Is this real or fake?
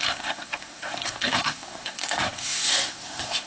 fake